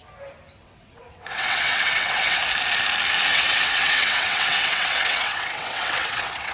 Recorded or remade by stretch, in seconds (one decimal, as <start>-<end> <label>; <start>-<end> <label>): 0.0-0.6 recorded; 0.6-2.4 remade; 2.4-3.3 recorded; 3.3-6.5 remade